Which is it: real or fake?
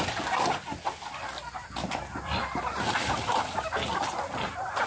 real